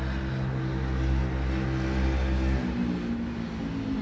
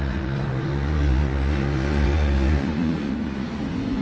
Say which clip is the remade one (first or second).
second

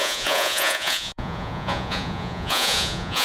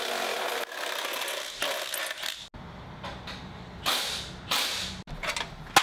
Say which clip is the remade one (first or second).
first